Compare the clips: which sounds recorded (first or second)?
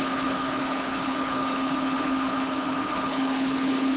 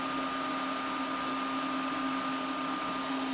second